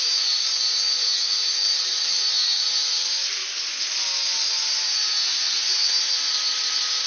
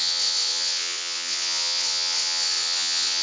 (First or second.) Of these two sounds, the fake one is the second